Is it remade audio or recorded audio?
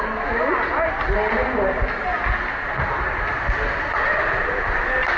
recorded